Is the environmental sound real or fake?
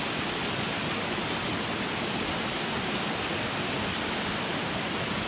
real